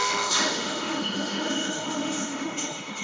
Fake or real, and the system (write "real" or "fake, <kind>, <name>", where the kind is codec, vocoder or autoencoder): fake, autoencoder, DAC-VAE